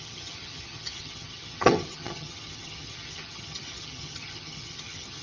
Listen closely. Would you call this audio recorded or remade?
remade